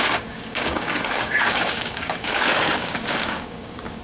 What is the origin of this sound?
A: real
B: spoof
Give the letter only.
B